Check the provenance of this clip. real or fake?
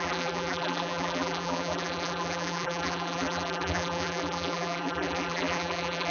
fake